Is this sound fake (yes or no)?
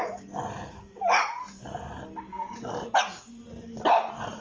no